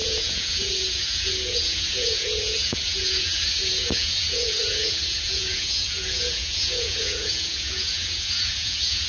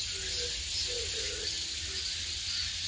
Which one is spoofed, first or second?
first